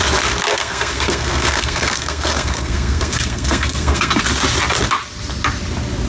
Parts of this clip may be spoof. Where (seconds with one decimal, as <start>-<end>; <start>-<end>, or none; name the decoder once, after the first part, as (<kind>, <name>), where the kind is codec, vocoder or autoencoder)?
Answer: 0.5-4.2 (codec, SNAC)